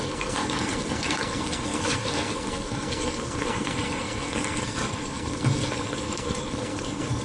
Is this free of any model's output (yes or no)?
no